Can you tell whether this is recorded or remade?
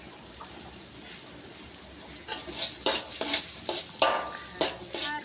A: recorded